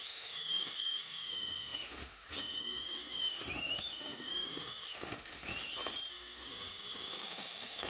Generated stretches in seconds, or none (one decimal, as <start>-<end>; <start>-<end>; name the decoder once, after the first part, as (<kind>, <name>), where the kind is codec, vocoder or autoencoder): 0.0-5.5 (autoencoder, DAC-VAE); 6.1-7.9